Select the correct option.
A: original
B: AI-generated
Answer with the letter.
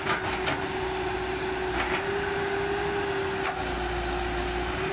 A